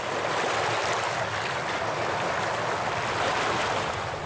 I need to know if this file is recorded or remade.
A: recorded